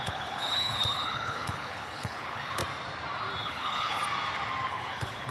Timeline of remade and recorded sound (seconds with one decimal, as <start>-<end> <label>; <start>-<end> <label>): 0.0-2.6 remade; 2.6-3.4 recorded; 3.4-4.0 remade; 4.0-4.7 recorded; 4.7-5.3 remade